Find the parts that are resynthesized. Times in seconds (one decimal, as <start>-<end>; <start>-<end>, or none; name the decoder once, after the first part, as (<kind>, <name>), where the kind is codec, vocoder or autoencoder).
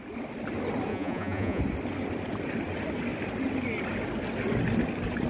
0.9-1.6 (vocoder, Vocos)